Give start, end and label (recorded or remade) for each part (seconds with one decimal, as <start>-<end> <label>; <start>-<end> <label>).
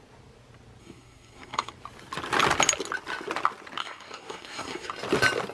0.0-0.8 recorded; 0.8-1.7 remade; 1.7-3.8 recorded; 3.8-4.9 remade; 4.9-5.5 recorded